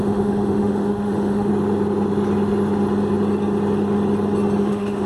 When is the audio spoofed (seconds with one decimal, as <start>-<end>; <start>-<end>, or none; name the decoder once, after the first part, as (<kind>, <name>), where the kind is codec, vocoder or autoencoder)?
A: 0.0-1.5 (autoencoder, DAC-VAE); 4.6-5.1

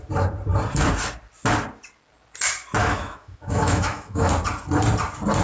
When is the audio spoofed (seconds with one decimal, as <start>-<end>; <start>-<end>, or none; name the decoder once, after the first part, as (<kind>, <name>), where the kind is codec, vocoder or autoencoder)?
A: 2.8-4.3 (autoencoder, DAC-VAE)

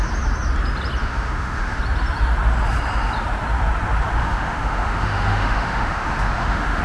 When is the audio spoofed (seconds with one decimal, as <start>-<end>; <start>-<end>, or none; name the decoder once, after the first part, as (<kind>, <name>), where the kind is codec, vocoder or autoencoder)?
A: 1.0-1.8 (autoencoder, DAC-VAE); 4.2-6.8

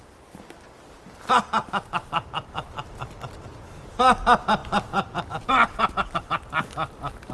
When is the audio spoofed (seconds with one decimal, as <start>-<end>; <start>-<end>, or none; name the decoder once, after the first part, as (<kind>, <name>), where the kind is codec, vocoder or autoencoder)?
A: none